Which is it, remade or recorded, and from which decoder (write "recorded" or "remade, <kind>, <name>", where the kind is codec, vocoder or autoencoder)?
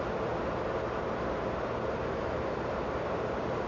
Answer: recorded